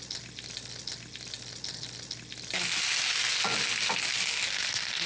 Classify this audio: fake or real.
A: real